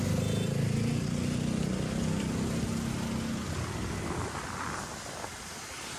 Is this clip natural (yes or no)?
yes